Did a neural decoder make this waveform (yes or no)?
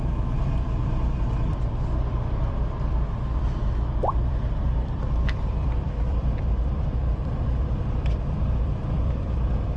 yes